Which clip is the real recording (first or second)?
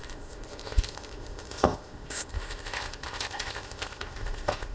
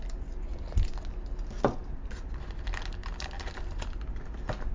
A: second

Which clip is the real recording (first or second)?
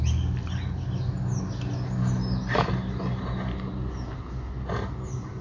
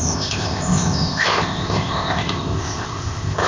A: first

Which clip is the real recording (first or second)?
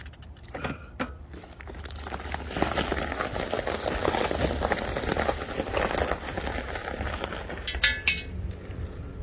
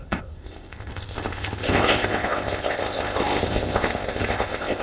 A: first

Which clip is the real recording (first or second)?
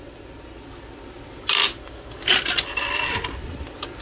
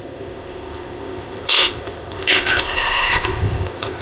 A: first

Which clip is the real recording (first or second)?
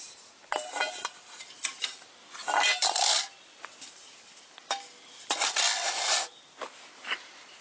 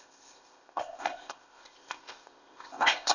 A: first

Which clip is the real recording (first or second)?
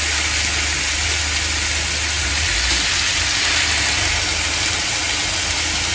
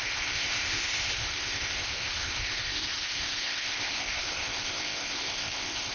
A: first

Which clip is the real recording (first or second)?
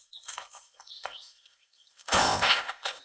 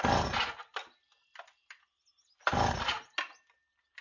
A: second